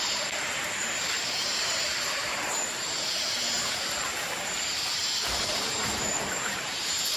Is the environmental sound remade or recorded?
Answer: remade